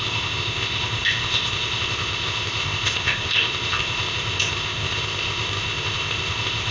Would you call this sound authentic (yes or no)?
no